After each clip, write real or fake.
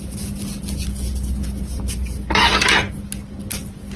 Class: real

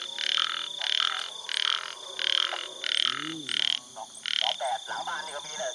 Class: real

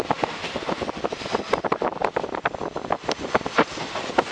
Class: fake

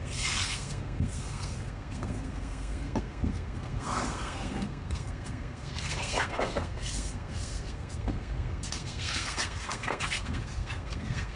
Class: fake